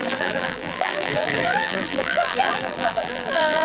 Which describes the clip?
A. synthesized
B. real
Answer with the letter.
A